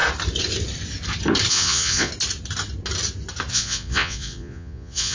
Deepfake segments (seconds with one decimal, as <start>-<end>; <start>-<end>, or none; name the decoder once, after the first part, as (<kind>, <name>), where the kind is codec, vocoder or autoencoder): 1.5-2.1 (vocoder, Vocos); 3.5-5.1